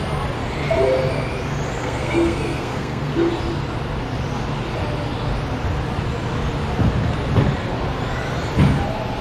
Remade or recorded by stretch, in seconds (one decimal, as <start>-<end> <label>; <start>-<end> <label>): 0.0-1.8 recorded; 1.8-3.3 remade; 3.3-9.2 recorded